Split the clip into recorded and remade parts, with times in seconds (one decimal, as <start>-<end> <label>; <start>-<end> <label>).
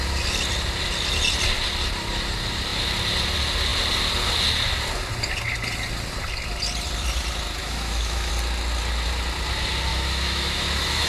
0.0-7.6 recorded; 7.6-8.3 remade; 8.3-9.9 recorded; 9.9-11.1 remade